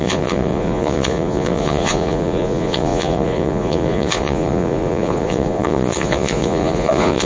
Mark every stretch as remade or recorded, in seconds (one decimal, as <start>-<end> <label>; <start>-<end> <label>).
0.0-7.3 remade